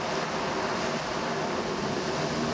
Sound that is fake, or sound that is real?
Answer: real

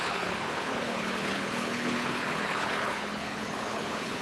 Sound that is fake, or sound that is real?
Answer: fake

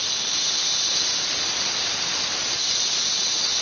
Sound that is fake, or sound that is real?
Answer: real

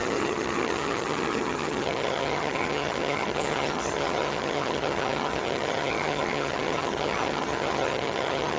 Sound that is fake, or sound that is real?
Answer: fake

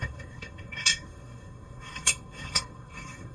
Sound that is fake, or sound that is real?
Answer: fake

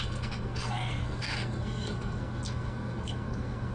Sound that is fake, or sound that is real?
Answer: fake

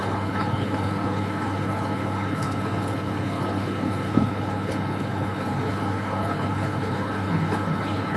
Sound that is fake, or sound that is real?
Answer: fake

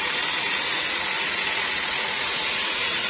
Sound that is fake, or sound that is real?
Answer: fake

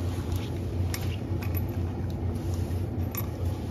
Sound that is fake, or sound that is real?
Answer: real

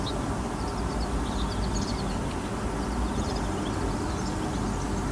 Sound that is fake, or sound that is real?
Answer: real